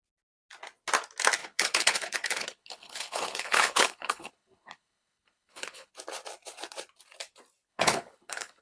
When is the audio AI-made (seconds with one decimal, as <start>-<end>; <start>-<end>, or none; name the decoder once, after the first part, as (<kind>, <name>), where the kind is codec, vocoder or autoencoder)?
1.4-5.9 (codec, HILCodec); 7.7-8.6